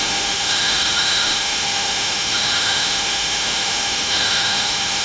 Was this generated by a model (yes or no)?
yes